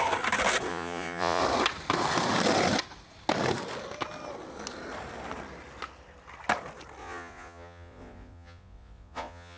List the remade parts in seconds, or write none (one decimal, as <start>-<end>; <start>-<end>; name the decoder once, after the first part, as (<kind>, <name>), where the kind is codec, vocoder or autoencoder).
0.7-1.4 (vocoder, Vocos); 7.0-9.6